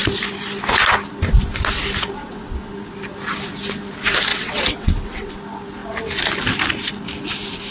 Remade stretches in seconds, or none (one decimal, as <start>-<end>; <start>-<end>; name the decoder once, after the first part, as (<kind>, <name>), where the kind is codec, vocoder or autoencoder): 2.2-2.7 (vocoder, WaveNeXt); 4.3-5.3